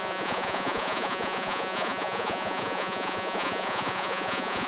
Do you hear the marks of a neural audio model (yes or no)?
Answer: yes